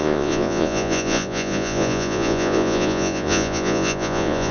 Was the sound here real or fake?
fake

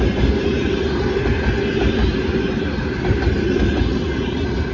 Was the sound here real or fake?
real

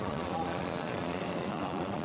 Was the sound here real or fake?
fake